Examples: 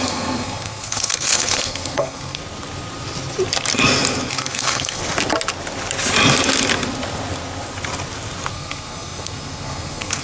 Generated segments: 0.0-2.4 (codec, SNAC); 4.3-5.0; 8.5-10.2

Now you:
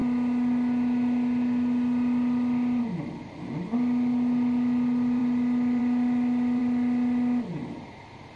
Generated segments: none

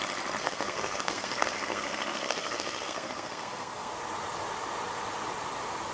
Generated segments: 0.4-3.9 (codec, SNAC)

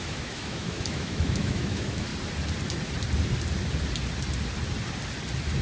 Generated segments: 0.0-2.1 (autoencoder, DAC-VAE)

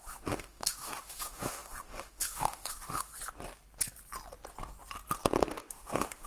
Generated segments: 0.0-3.1 (autoencoder, DAC-VAE); 5.4-6.3

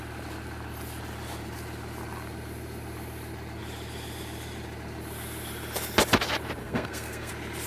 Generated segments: 6.6-7.3 (codec, SNAC)

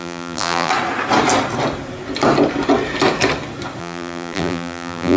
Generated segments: 0.0-0.7 (vocoder, BigVGAN v2); 3.8-5.2

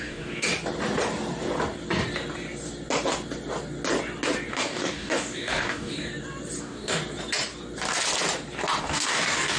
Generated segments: 0.0-0.5 (codec, DAC); 4.5-6.1; 6.6-7.0; 8.8-9.6